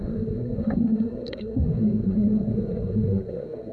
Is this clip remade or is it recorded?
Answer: remade